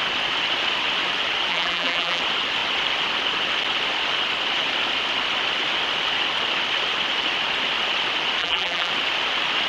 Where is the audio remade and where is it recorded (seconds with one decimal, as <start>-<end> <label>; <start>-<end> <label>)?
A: 0.0-1.5 recorded; 1.5-2.2 remade; 2.2-8.4 recorded; 8.4-8.9 remade; 8.9-9.7 recorded